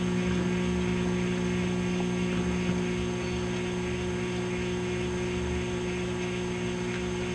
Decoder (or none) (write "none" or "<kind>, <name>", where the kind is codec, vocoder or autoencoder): none